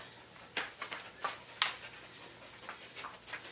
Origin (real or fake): real